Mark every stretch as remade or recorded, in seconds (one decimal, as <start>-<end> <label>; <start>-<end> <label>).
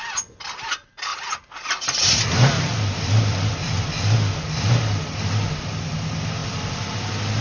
0.0-1.1 recorded; 1.1-4.7 remade; 4.7-6.4 recorded; 6.4-6.9 remade; 6.9-7.4 recorded